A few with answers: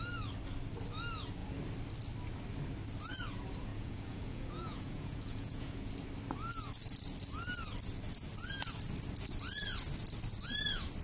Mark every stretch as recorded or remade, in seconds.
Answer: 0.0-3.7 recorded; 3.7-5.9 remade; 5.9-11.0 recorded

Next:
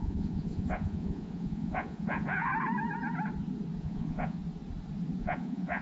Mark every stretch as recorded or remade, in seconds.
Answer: 0.0-2.5 remade; 2.5-3.8 recorded; 3.8-4.4 remade; 4.4-5.2 recorded; 5.2-5.8 remade